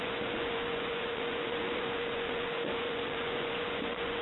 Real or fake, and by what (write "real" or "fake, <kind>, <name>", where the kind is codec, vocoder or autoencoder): fake, vocoder, Vocos